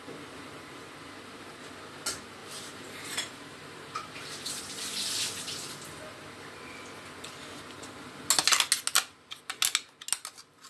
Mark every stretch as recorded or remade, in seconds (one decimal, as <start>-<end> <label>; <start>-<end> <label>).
0.0-2.4 recorded; 2.4-4.6 remade; 4.6-10.7 recorded